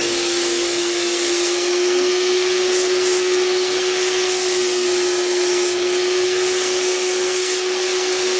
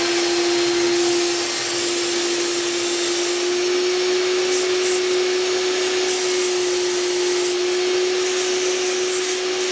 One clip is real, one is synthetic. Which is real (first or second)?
second